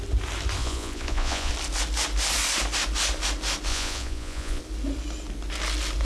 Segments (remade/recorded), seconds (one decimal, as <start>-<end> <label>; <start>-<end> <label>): 0.0-0.6 recorded; 0.6-1.5 remade; 1.5-3.7 recorded; 3.7-4.6 remade; 4.6-6.0 recorded